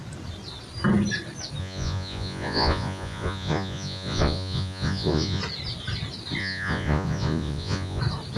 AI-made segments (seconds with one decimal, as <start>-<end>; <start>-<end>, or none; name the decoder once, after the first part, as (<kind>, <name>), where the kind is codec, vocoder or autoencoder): 1.6-5.4 (vocoder, Vocos); 6.4-8.0

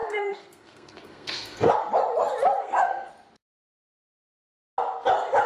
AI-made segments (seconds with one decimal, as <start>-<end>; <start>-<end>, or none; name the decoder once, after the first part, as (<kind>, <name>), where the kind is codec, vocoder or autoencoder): 0.0-1.7 (codec, SNAC); 2.6-3.1

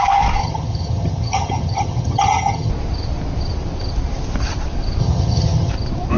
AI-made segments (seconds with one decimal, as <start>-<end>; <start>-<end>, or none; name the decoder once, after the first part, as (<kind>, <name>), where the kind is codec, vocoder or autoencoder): 0.4-2.7 (vocoder, HiFi-GAN); 5.0-5.7